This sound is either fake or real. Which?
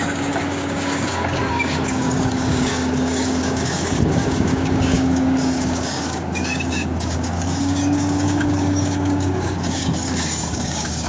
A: fake